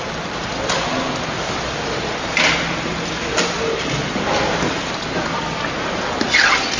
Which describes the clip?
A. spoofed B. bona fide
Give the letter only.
B